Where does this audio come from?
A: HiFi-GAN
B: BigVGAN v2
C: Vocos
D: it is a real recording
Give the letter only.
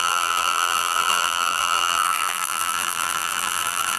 B